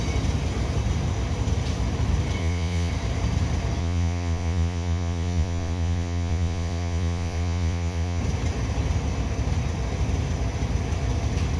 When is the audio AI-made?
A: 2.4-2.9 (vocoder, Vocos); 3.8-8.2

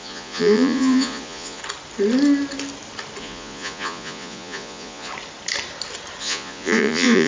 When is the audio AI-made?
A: 0.0-1.6 (vocoder, Vocos); 3.2-5.1; 6.2-7.3

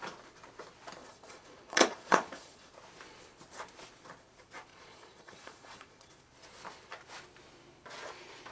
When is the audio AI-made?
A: 1.0-2.7 (vocoder, Vocos); 4.7-6.1